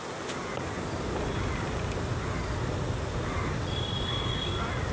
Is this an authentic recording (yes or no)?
yes